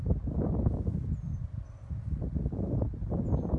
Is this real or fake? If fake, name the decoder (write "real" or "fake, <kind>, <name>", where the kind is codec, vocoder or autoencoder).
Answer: real